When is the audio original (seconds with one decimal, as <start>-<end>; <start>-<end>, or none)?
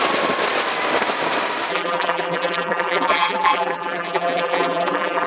0.0-1.7